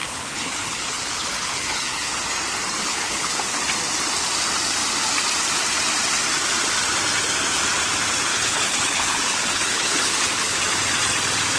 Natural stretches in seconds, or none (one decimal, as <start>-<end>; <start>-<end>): 2.2-2.8; 3.6-8.3; 10.6-11.6

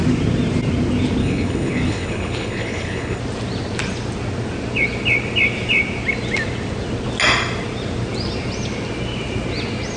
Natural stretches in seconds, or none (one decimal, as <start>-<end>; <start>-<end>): 0.0-1.2; 3.2-10.0

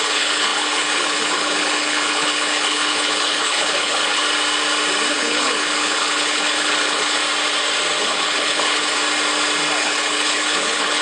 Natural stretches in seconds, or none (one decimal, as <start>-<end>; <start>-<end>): 4.2-5.1; 7.2-8.0; 9.0-9.8

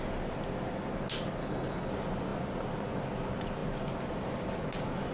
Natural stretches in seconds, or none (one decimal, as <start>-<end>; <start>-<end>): 0.0-1.4; 1.9-5.1